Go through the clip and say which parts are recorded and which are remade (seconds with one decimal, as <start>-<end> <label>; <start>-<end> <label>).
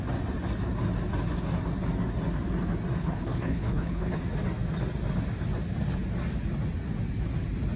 0.0-3.0 recorded; 3.0-4.2 remade; 4.2-7.8 recorded